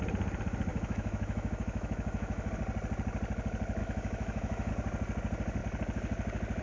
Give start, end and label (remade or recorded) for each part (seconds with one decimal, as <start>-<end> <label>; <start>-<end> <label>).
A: 0.0-0.7 recorded; 0.7-2.5 remade; 2.5-3.8 recorded; 3.8-4.7 remade; 4.7-6.6 recorded